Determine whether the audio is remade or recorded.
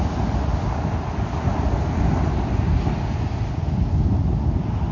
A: recorded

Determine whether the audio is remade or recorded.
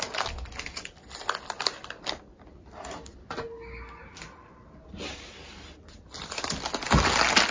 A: recorded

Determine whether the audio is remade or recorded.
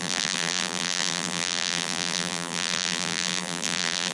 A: remade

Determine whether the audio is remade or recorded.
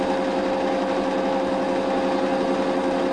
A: recorded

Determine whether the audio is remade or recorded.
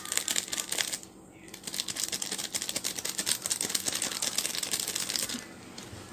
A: recorded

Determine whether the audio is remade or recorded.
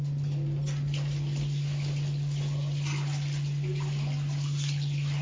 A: recorded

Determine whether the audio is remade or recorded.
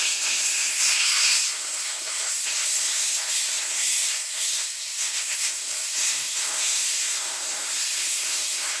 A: remade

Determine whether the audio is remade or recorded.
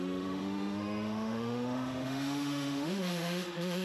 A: remade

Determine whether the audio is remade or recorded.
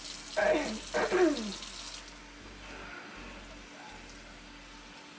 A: recorded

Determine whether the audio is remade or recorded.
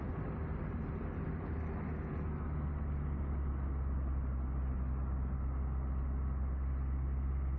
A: recorded